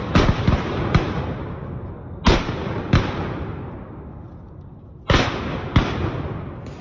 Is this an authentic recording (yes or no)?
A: yes